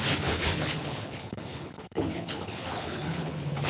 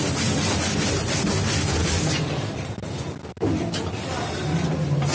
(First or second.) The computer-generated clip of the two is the first